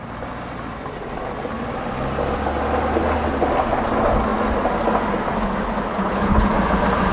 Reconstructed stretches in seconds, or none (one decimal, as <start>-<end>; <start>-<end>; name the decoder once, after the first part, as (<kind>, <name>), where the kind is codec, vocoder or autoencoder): 5.9-6.5 (codec, HILCodec)